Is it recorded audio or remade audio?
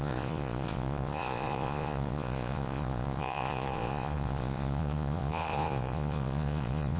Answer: remade